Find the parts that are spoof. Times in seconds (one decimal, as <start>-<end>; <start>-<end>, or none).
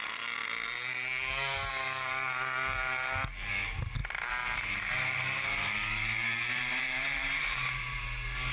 4.0-8.0